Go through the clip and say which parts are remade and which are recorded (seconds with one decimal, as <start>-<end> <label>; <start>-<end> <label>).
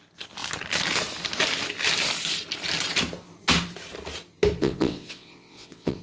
0.0-4.6 recorded; 4.6-6.0 remade